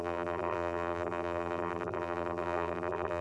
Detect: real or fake fake